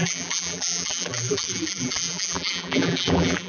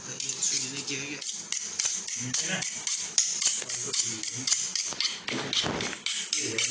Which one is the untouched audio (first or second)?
second